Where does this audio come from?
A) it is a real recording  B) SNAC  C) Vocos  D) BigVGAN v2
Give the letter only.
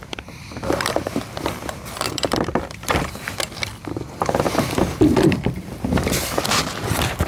D